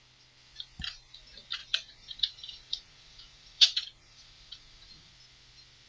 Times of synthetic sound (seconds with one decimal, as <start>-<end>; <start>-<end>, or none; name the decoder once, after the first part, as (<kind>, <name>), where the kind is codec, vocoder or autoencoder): 1.6-5.1 (vocoder, Vocos)